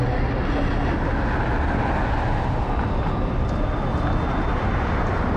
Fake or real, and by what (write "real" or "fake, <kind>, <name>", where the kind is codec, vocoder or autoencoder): real